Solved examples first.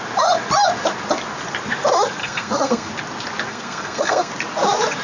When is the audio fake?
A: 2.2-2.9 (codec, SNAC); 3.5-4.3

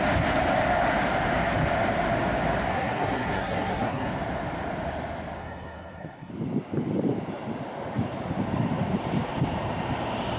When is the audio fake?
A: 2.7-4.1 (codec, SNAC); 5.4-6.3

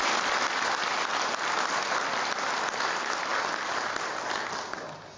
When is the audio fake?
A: 0.0-1.1 (vocoder, BigVGAN v2); 1.8-3.3

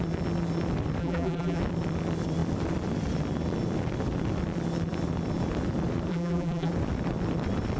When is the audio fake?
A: 1.0-1.6 (vocoder, BigVGAN v2); 6.1-6.7

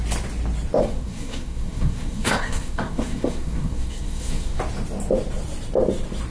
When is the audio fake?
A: 0.8-4.6 (codec, SNAC)

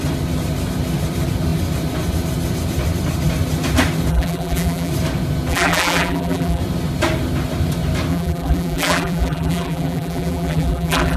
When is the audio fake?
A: 4.1-4.9 (vocoder, BigVGAN v2); 5.5-6.6; 8.1-11.2